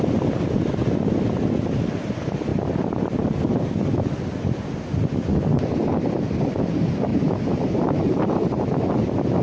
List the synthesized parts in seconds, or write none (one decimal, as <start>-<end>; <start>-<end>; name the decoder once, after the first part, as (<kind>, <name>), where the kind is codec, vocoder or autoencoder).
2.5-3.4 (vocoder, BigVGAN v2); 7.1-8.2